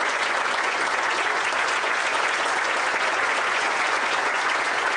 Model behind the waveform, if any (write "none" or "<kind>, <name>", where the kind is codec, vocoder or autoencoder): vocoder, Vocos